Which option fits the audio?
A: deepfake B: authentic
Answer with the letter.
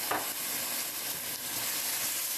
B